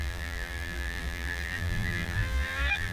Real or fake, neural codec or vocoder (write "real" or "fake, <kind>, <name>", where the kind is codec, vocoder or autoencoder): fake, vocoder, BigVGAN v2